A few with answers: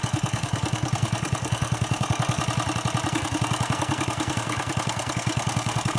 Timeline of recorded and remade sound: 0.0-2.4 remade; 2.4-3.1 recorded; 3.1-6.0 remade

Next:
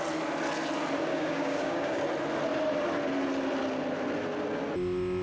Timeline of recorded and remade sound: 0.0-1.1 recorded; 1.1-2.0 remade; 2.0-5.2 recorded

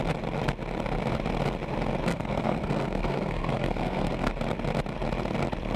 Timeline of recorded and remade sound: 0.0-2.1 recorded; 2.1-4.3 remade; 4.3-5.8 recorded

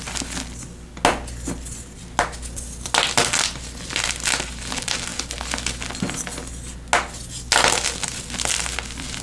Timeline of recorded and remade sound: 0.0-9.2 recorded

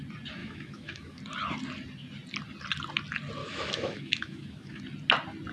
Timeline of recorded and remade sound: 0.0-0.4 recorded; 0.4-1.2 remade; 1.2-3.4 recorded; 3.4-4.8 remade; 4.8-5.5 recorded